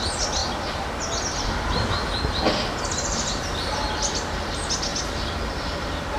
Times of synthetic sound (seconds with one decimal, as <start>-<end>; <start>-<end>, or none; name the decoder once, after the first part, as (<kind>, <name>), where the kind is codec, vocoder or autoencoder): none